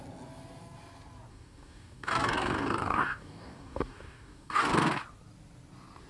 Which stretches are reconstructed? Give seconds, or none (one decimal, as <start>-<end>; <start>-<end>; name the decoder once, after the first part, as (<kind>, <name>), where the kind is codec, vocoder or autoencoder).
1.3-5.0 (codec, DAC)